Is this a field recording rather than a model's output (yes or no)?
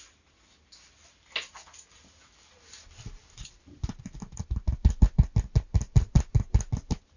yes